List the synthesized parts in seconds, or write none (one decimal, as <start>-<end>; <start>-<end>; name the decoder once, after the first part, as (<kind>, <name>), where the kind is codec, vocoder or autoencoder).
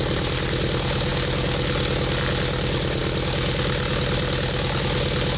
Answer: none